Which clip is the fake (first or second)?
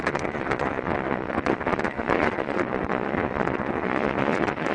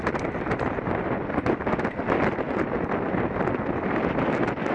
first